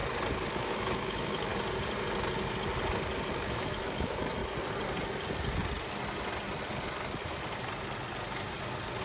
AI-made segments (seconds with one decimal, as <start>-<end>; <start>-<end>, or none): 0.5-1.5; 3.3-4.4